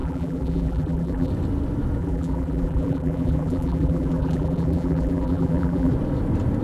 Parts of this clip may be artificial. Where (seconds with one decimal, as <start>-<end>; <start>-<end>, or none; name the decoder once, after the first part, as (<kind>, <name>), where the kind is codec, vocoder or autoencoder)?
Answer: 0.0-1.3 (vocoder, BigVGAN v2); 2.0-5.9